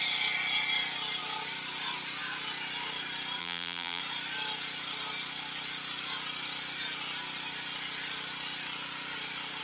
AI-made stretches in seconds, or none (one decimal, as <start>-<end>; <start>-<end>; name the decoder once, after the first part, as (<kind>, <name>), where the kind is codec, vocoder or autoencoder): 3.4-4.0 (vocoder, BigVGAN v2)